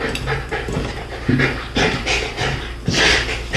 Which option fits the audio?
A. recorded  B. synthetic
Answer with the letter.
A